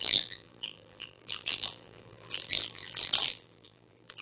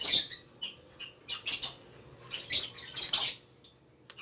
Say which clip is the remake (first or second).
first